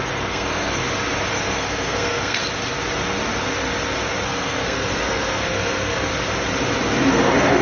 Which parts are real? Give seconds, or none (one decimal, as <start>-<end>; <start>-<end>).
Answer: 0.8-1.3; 2.4-4.2; 6.1-7.1